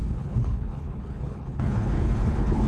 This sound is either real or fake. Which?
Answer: fake